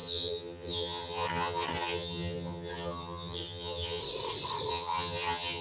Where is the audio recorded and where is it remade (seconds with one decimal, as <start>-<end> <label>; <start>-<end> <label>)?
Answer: 0.0-4.0 remade; 4.0-4.7 recorded; 4.7-5.6 remade